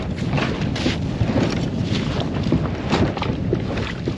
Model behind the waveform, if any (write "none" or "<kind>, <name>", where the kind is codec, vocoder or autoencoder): none